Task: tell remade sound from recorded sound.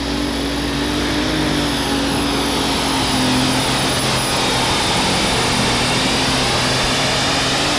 recorded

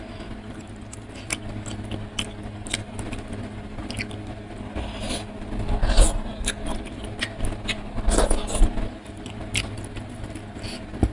recorded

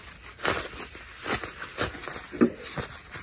recorded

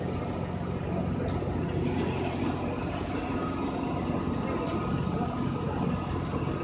recorded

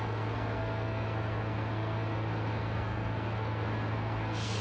remade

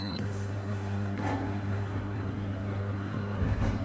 remade